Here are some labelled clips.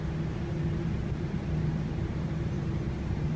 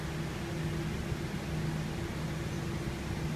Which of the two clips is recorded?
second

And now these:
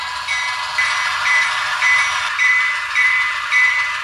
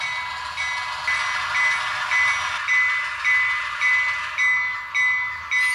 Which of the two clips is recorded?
second